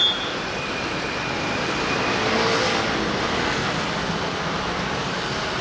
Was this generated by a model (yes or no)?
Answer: no